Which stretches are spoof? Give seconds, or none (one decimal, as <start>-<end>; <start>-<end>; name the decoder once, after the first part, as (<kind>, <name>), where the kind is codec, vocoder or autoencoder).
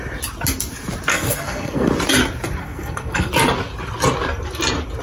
1.1-1.9 (codec, SNAC); 2.6-3.3